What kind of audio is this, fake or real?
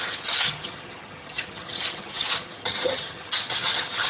fake